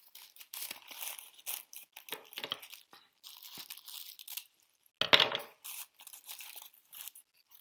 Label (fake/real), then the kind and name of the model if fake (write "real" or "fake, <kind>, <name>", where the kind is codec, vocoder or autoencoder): real